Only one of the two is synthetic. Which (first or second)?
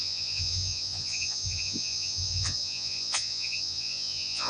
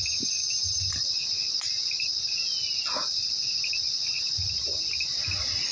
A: first